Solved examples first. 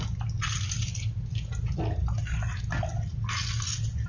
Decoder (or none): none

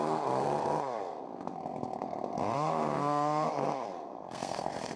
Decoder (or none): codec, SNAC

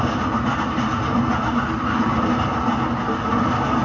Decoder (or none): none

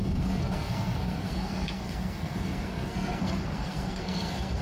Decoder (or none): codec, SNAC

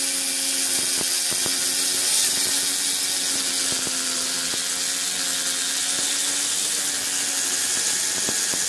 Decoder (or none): none